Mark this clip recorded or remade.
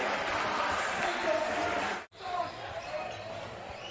remade